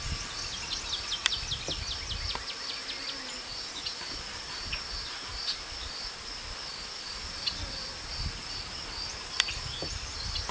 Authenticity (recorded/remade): recorded